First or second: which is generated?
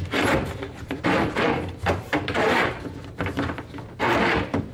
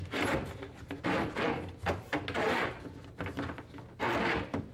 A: first